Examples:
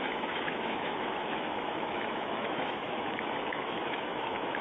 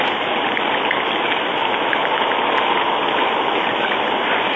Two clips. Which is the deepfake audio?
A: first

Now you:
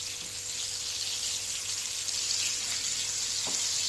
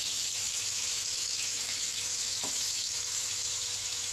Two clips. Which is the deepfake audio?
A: second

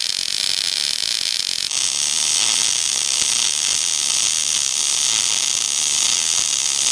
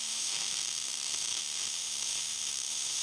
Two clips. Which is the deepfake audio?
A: second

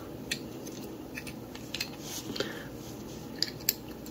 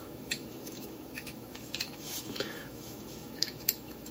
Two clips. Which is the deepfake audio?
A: second